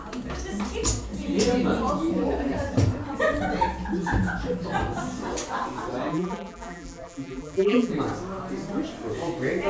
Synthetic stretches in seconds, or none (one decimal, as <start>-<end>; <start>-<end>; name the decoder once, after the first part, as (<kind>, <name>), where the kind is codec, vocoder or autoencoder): 6.1-7.9 (vocoder, BigVGAN v2)